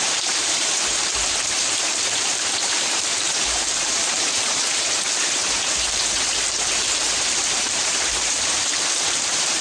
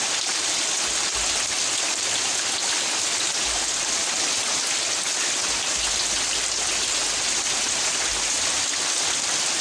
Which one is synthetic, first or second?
first